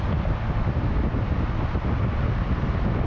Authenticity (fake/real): real